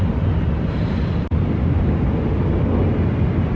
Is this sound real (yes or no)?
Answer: yes